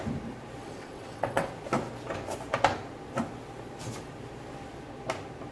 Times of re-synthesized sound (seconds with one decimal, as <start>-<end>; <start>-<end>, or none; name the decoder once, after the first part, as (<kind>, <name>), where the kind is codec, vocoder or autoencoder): 0.6-1.5 (vocoder, WaveNeXt)